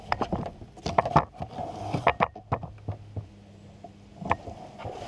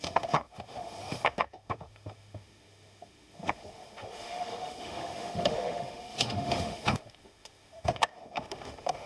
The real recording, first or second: first